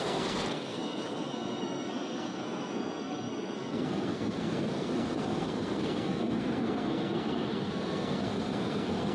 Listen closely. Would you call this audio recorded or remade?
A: remade